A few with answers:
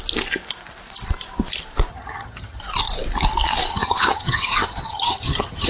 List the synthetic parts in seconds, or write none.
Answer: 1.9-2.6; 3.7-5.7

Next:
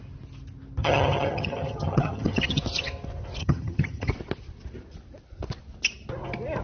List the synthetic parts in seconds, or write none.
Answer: 0.8-2.6; 3.4-4.1

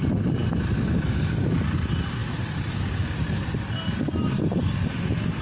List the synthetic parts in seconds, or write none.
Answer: none

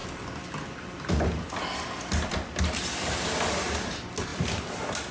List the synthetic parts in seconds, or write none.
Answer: none

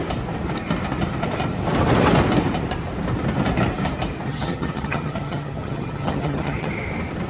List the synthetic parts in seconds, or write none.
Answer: 4.3-6.7

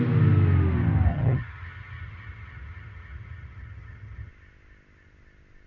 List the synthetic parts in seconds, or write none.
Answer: 1.1-4.3

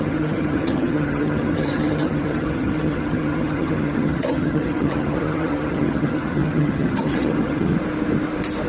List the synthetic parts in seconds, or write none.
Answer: 0.0-7.7

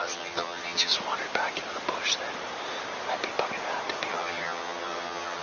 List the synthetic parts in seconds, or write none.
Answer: 0.0-0.9; 4.1-5.4